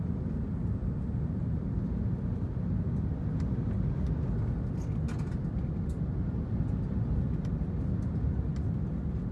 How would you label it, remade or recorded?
recorded